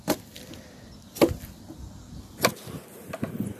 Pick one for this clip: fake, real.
real